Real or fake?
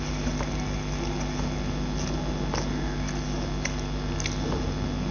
real